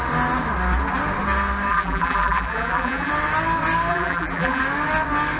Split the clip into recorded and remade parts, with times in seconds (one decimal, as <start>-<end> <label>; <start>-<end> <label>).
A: 0.0-1.7 recorded; 1.7-3.1 remade; 3.1-3.9 recorded; 3.9-4.6 remade; 4.6-5.4 recorded